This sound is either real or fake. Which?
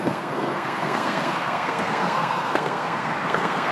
fake